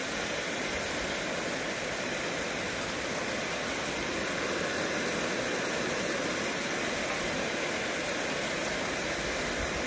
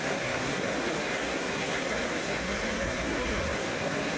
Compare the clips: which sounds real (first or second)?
first